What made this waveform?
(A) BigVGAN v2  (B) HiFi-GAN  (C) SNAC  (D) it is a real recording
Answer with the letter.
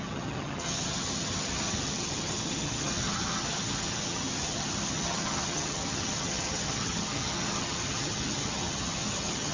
B